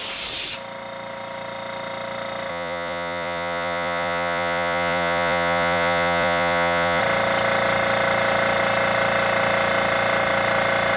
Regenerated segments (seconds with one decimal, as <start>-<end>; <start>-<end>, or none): 2.5-7.0